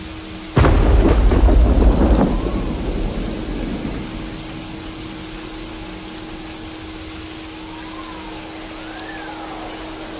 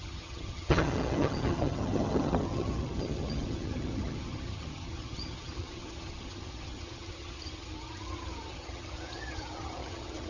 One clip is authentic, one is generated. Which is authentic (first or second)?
first